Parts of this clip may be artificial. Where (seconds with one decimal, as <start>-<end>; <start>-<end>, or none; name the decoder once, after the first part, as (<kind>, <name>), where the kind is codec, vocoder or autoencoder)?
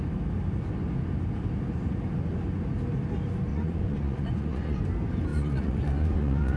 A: 3.5-4.8 (vocoder, Vocos); 5.3-6.6